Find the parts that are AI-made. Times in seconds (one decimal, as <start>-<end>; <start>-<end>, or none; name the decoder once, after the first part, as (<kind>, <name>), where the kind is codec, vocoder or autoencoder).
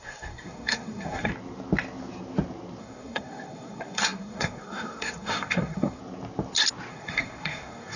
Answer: 0.0-1.3 (codec, SNAC); 2.8-6.0; 6.9-8.0